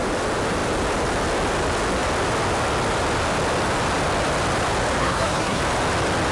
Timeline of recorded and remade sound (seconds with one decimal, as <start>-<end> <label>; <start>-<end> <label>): 0.0-5.0 recorded; 5.0-5.6 remade; 5.6-6.3 recorded